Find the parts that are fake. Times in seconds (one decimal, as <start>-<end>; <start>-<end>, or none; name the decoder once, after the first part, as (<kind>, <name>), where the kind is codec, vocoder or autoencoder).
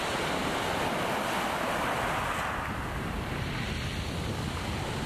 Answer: none